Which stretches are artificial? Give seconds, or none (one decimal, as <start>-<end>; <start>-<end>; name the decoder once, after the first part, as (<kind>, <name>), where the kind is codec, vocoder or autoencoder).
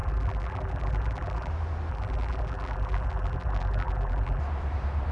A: 0.0-1.5 (vocoder, BigVGAN v2); 1.9-4.4